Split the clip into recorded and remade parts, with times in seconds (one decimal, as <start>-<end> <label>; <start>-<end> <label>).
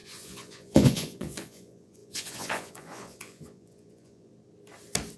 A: 0.0-4.3 remade; 4.3-5.2 recorded